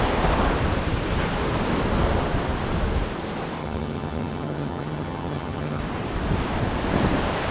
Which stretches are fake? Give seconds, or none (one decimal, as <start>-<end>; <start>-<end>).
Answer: 3.6-5.8